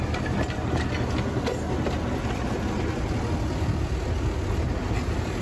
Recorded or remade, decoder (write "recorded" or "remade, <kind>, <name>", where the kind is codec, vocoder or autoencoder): recorded